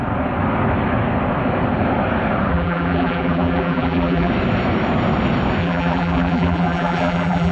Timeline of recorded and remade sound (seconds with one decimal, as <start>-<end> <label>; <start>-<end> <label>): 0.0-2.5 recorded; 2.5-4.3 remade; 4.3-5.6 recorded; 5.6-7.5 remade